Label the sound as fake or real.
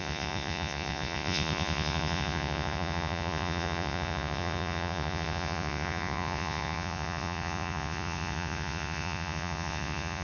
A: fake